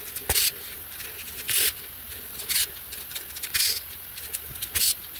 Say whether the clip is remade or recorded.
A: recorded